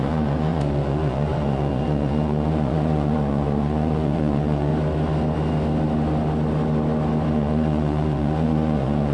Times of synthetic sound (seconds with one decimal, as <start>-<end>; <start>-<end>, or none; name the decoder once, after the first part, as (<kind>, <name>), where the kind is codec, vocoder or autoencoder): 0.0-4.7 (vocoder, Vocos); 7.3-9.1

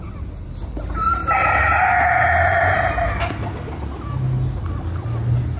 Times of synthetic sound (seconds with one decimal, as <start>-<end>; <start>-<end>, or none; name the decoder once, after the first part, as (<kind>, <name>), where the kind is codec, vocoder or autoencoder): none